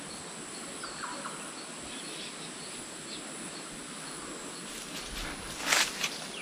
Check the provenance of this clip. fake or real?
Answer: real